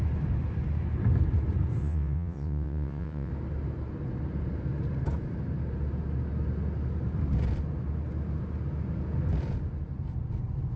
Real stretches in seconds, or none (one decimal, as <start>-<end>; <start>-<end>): 0.0-1.8; 3.3-10.8